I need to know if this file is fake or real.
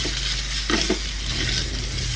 real